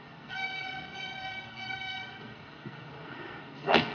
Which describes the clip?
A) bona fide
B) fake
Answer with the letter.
B